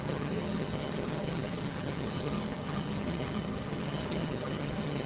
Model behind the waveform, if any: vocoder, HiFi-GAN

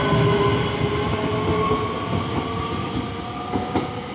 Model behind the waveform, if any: none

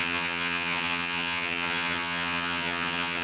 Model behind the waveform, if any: vocoder, HiFi-GAN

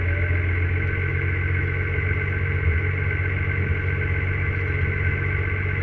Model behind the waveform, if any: none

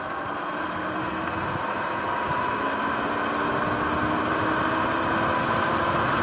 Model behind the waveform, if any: none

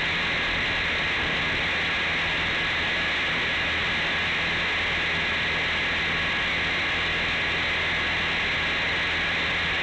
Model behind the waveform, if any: none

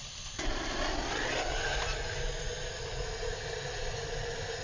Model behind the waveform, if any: none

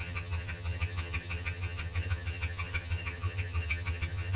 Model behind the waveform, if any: vocoder, HiFi-GAN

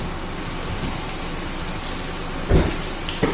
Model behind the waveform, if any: none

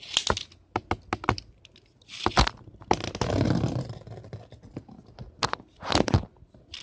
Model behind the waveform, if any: none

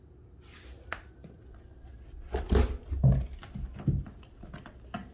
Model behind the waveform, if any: none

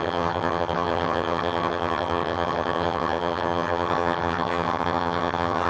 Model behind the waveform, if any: vocoder, HiFi-GAN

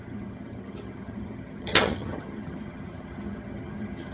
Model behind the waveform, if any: vocoder, HiFi-GAN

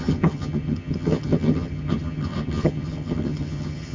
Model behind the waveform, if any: vocoder, HiFi-GAN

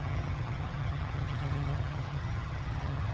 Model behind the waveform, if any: vocoder, HiFi-GAN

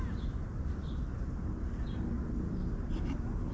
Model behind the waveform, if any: none